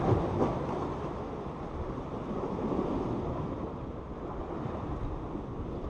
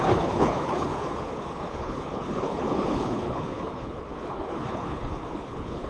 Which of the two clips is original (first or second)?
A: first